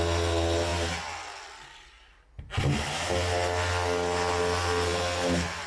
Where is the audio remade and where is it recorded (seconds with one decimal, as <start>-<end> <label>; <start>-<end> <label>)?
0.0-5.7 recorded